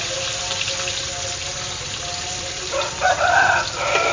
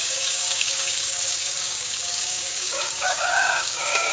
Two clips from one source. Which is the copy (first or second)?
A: second